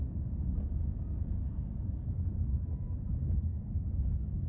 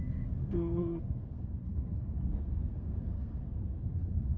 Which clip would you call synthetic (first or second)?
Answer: second